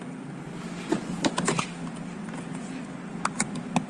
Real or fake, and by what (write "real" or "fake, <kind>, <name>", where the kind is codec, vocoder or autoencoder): real